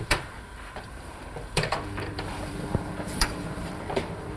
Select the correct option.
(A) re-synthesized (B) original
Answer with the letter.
A